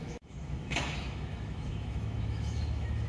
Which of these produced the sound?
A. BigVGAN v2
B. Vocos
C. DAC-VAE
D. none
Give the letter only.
C